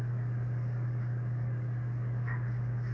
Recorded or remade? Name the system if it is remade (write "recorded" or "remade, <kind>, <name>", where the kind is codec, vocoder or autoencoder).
remade, codec, DAC